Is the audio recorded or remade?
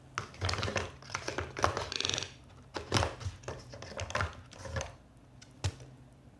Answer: recorded